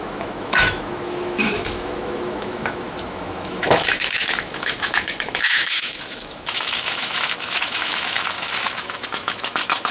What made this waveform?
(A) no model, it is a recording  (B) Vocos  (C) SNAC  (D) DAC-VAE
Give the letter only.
D